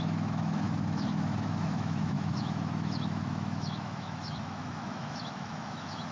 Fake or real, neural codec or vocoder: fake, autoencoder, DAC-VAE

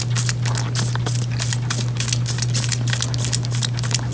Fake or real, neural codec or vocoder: real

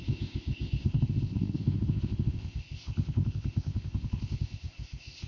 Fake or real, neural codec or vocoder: fake, codec, ZipCodec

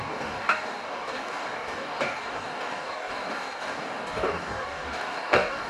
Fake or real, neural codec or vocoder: fake, codec, DAC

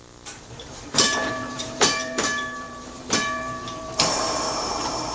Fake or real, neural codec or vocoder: fake, vocoder, BigVGAN v2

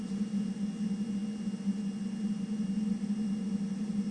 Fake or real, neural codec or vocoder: real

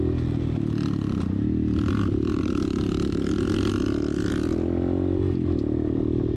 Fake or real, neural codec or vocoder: real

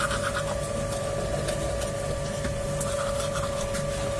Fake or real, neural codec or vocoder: real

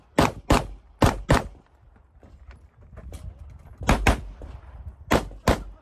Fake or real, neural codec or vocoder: real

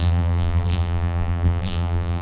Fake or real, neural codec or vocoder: fake, vocoder, BigVGAN v2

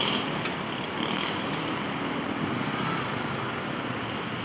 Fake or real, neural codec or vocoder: real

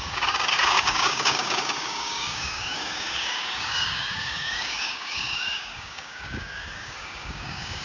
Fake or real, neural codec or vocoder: fake, codec, DAC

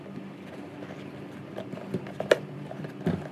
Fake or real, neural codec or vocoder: real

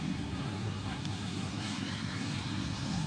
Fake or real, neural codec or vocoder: fake, codec, SNAC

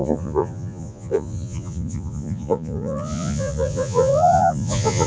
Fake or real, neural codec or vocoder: fake, vocoder, Vocos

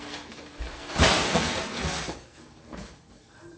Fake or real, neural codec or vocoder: fake, codec, SNAC